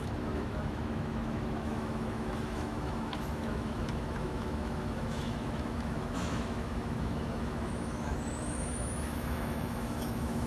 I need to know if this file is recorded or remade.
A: remade